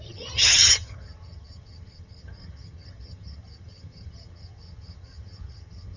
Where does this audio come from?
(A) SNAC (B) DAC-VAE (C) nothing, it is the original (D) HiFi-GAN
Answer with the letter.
D